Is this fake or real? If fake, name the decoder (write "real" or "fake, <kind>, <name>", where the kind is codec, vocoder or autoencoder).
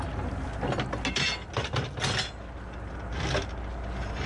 real